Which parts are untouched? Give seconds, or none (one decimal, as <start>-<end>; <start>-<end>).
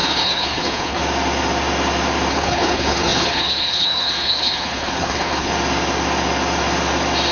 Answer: 1.0-2.3; 5.5-7.3